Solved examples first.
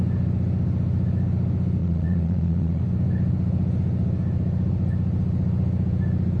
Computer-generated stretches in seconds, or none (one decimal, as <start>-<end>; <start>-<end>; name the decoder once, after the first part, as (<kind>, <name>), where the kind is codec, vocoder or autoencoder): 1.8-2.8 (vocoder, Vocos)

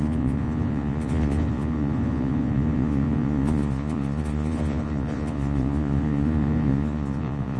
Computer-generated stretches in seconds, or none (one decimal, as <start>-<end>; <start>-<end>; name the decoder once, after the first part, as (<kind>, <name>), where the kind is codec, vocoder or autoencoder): 0.0-7.6 (vocoder, Vocos)

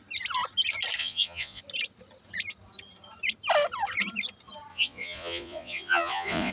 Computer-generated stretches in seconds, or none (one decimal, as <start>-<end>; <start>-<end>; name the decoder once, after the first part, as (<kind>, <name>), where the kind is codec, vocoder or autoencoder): 1.0-1.6 (vocoder, Vocos); 4.7-6.5

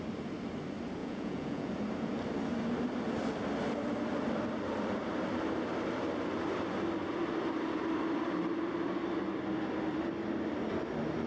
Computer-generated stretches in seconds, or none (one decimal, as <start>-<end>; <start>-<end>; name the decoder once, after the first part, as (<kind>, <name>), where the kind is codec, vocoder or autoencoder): 1.0-1.7 (vocoder, Vocos)

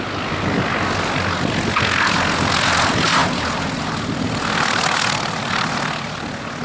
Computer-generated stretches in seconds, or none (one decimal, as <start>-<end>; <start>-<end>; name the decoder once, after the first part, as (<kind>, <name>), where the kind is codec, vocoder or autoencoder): none

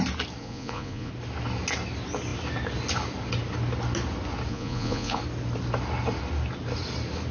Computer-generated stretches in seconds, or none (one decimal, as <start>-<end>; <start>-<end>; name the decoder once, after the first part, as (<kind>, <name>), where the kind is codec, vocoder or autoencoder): 0.4-1.1 (vocoder, Vocos); 4.5-5.2